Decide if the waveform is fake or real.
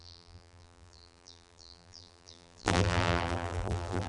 fake